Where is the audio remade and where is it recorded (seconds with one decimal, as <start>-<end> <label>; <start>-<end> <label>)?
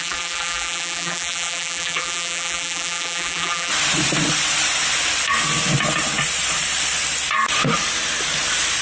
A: 0.0-3.7 remade; 3.7-8.8 recorded